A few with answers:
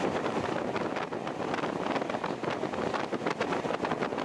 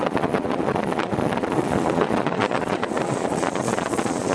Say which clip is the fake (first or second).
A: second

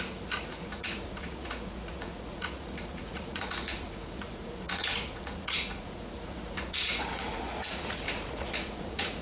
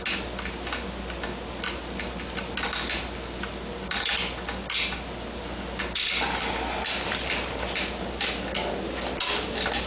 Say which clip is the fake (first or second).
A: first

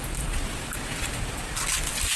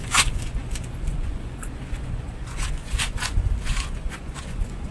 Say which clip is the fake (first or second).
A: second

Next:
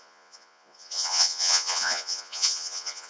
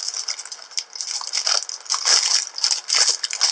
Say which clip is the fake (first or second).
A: first